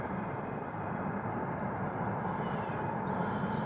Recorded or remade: recorded